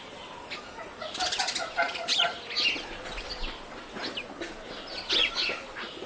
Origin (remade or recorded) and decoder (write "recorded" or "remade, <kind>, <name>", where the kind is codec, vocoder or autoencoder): recorded